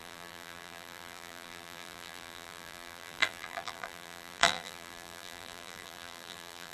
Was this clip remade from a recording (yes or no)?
yes